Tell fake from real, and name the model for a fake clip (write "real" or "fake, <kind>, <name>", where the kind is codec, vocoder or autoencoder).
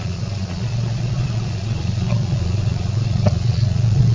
fake, vocoder, Vocos